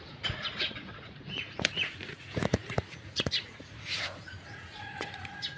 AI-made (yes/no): yes